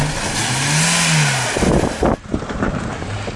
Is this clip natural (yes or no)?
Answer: yes